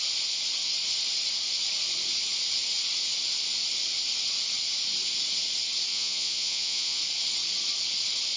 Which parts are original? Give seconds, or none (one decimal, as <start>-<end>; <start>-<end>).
0.0-5.9; 7.0-8.4